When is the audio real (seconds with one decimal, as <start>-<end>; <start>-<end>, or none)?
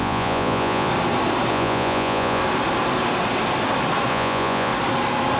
0.9-1.5; 2.4-4.1; 4.7-5.4